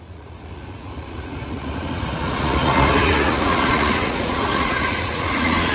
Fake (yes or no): yes